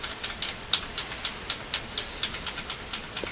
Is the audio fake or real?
real